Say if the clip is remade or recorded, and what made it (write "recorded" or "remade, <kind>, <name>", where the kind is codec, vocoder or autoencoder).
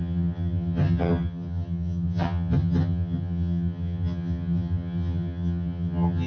remade, vocoder, HiFi-GAN